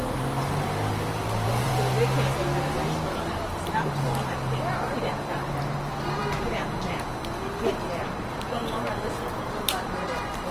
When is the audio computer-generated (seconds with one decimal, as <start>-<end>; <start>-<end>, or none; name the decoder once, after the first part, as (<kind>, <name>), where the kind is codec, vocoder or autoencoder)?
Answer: 0.0-1.7 (vocoder, BigVGAN v2); 3.1-6.2; 8.0-8.6; 9.2-10.5